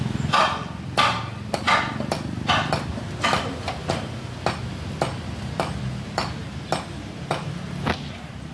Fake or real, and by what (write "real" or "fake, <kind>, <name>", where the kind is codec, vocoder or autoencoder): real